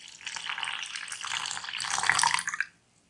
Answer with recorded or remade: recorded